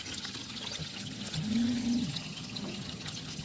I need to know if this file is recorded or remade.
remade